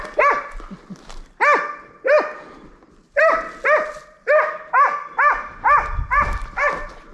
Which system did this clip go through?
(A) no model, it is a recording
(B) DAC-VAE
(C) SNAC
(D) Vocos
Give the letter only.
A